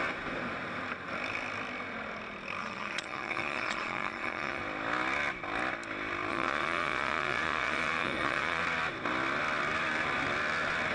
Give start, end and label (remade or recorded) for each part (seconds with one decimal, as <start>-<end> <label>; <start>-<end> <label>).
0.0-2.6 recorded; 2.6-4.6 remade; 4.6-6.3 recorded; 6.3-8.6 remade; 8.6-10.9 recorded